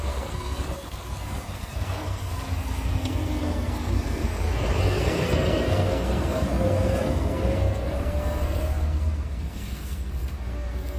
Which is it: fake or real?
fake